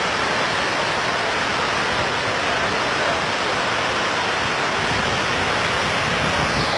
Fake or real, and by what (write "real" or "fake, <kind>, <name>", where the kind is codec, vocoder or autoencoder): real